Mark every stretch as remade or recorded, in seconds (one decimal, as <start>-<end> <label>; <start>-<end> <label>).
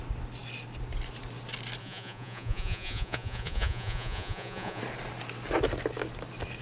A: 0.0-1.8 recorded; 1.8-4.8 remade; 4.8-6.6 recorded